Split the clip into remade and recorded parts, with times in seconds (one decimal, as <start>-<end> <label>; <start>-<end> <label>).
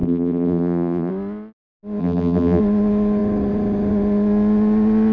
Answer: 0.0-1.1 remade; 1.1-2.0 recorded; 2.0-2.6 remade; 2.6-5.1 recorded